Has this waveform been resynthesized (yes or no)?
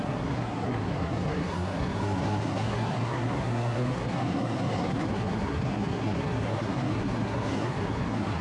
yes